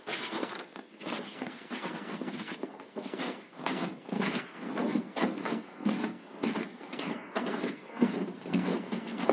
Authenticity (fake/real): fake